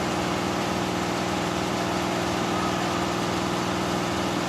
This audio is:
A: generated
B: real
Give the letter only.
B